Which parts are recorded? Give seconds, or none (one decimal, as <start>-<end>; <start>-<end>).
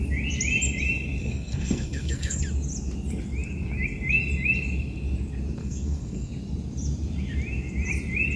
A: 0.0-1.2; 2.4-5.6; 6.3-8.4